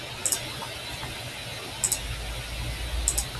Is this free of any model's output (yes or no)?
yes